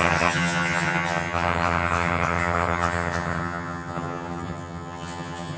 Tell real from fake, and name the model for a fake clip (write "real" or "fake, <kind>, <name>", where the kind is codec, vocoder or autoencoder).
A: fake, vocoder, HiFi-GAN